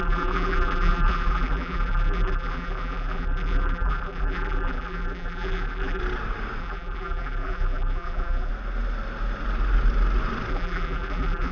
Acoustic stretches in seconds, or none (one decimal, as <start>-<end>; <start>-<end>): 6.0-6.6; 8.5-10.5